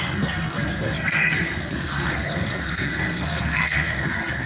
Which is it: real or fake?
fake